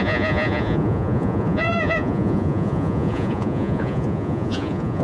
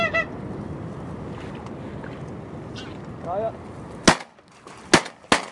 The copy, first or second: first